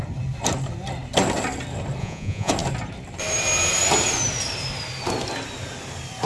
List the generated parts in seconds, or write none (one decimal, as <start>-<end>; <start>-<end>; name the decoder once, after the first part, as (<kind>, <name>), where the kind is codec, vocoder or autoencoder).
2.0-2.5 (vocoder, Vocos)